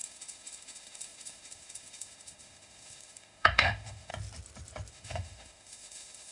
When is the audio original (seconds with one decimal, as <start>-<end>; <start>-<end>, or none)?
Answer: 4.1-4.9